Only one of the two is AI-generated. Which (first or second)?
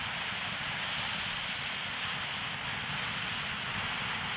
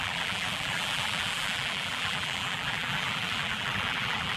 second